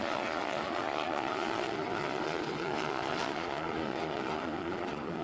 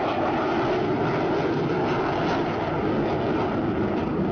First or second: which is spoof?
first